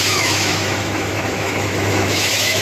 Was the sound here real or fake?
fake